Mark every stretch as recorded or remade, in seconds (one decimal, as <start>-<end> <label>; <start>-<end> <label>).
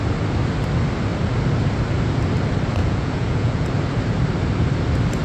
0.0-2.8 recorded; 2.8-3.7 remade; 3.7-5.2 recorded